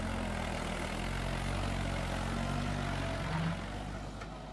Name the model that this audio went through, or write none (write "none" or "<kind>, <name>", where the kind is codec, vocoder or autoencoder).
none